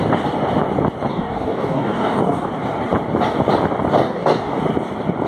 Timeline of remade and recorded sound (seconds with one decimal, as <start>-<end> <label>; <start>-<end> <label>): 0.0-1.1 recorded; 1.1-2.5 remade; 2.5-4.0 recorded; 4.0-4.6 remade; 4.6-5.3 recorded